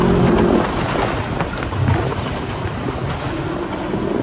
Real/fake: real